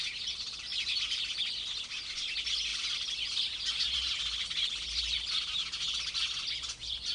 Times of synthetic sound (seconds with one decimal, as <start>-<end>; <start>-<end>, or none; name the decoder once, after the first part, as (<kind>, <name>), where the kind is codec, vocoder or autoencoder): none